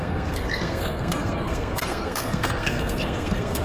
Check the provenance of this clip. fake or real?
fake